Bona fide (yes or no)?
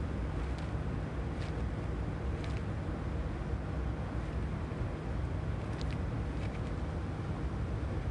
yes